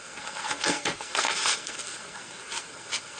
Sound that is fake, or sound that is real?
fake